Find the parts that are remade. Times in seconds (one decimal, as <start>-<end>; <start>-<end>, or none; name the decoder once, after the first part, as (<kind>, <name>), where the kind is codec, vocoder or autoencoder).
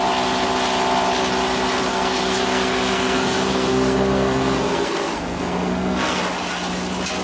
1.9-6.2 (codec, SNAC)